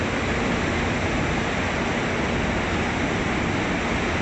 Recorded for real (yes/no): yes